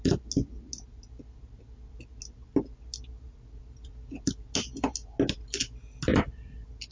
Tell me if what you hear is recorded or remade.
recorded